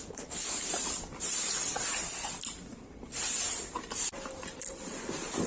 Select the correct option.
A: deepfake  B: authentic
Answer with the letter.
A